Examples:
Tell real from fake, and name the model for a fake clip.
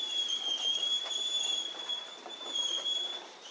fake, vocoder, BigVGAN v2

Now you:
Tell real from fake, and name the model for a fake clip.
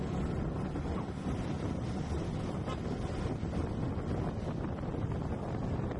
real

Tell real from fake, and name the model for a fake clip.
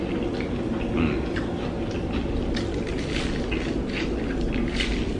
real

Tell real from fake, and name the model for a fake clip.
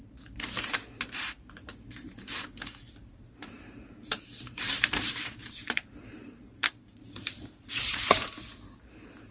fake, vocoder, BigVGAN v2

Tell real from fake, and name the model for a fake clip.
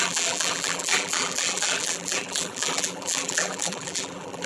fake, vocoder, BigVGAN v2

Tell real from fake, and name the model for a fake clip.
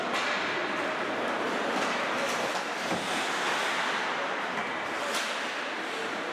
real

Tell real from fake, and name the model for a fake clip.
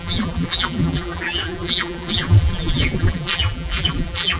fake, vocoder, BigVGAN v2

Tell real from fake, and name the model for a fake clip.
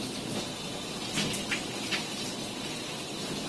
real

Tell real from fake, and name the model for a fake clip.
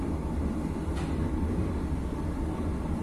real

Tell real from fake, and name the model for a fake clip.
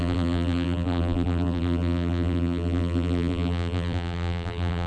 fake, vocoder, BigVGAN v2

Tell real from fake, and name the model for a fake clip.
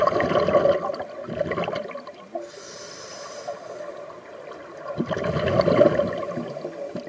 real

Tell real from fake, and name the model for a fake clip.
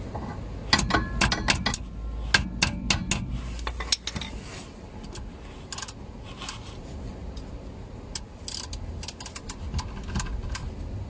real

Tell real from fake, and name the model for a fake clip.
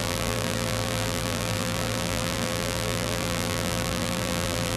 fake, vocoder, BigVGAN v2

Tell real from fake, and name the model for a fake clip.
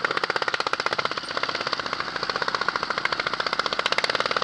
real